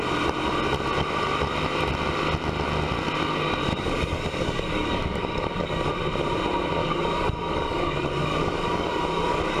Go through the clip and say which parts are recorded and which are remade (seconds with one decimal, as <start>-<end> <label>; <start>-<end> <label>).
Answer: 0.0-3.7 recorded; 3.7-5.9 remade; 5.9-6.8 recorded; 6.8-9.6 remade